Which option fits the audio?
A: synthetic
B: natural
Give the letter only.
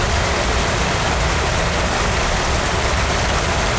B